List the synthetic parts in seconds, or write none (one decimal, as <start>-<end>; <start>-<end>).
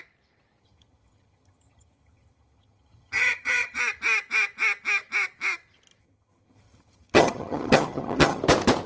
0.6-3.8; 6.0-8.4